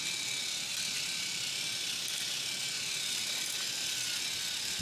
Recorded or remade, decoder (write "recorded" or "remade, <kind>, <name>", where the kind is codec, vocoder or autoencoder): recorded